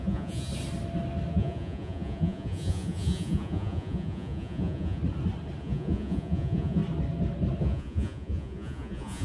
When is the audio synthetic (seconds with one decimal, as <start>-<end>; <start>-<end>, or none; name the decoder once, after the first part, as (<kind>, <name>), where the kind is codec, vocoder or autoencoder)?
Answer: 0.0-0.5 (vocoder, Vocos); 1.3-5.0; 5.6-6.8; 7.6-9.2